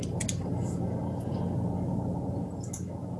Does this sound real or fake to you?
real